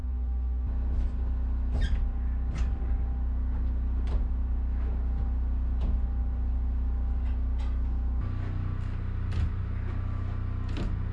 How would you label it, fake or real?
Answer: real